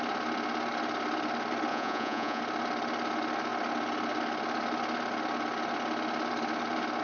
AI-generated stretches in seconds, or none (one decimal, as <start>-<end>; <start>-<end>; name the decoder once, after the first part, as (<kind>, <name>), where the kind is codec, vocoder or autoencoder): 1.7-2.4 (vocoder, Vocos)